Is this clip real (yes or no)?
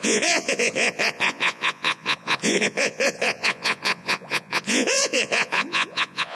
no